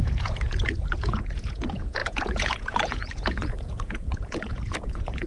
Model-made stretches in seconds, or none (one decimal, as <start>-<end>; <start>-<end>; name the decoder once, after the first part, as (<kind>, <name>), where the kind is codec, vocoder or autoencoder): 0.0-5.3 (vocoder, Vocos)